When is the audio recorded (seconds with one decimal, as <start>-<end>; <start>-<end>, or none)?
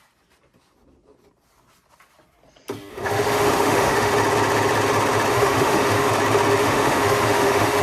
0.0-2.9; 4.1-5.3; 6.1-6.6